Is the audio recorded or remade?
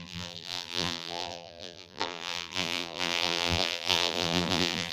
remade